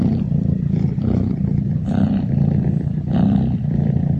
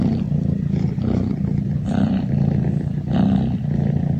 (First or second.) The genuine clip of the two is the second